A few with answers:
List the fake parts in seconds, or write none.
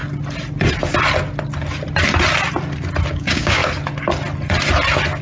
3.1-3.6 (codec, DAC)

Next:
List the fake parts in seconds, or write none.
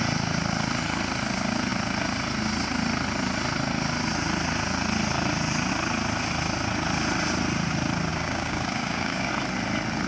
8.1-9.3 (codec, DAC)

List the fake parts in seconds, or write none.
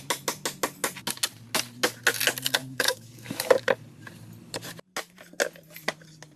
2.6-3.7 (codec, DAC)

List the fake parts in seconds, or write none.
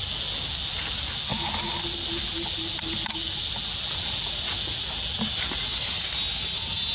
none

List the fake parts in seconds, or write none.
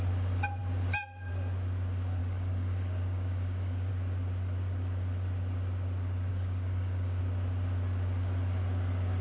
2.2-3.9 (codec, DAC); 6.3-7.2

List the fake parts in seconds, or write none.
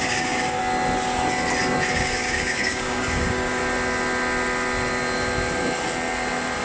0.0-0.6 (codec, DAC); 1.9-3.6